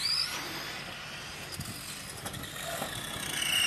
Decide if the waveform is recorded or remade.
recorded